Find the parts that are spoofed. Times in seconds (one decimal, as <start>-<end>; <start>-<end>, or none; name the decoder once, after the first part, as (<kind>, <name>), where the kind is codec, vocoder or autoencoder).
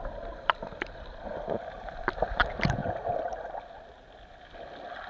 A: 0.0-2.8 (vocoder, BigVGAN v2); 3.6-5.1